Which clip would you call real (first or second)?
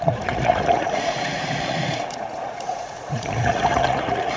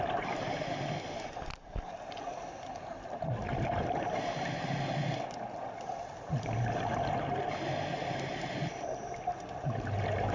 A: second